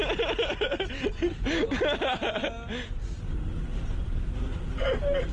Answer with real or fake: real